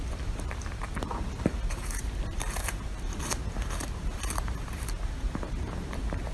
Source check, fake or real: fake